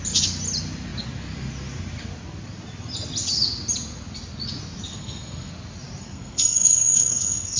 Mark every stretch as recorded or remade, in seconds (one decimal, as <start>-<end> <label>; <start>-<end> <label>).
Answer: 0.0-4.9 recorded; 4.9-5.5 remade; 5.5-6.0 recorded; 6.0-7.6 remade